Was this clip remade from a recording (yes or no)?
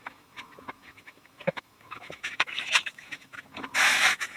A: yes